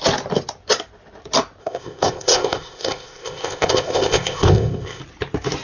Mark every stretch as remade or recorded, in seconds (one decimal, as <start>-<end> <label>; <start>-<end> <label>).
0.0-1.6 recorded; 1.6-5.0 remade; 5.0-5.6 recorded

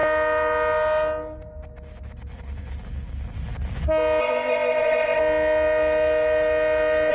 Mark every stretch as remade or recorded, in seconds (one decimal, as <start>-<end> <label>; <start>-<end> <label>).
0.0-4.2 recorded; 4.2-5.2 remade; 5.2-7.1 recorded

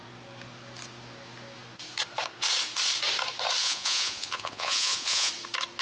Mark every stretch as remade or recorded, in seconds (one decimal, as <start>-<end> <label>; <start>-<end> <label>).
0.0-3.6 recorded; 3.6-5.3 remade; 5.3-5.8 recorded

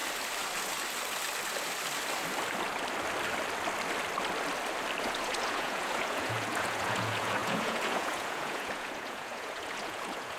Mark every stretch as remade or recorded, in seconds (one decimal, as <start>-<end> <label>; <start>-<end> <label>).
0.0-5.0 recorded; 5.0-10.4 remade